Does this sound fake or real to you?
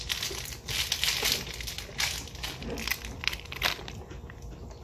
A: real